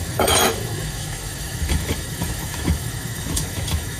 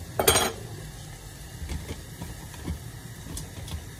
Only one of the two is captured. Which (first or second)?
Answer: second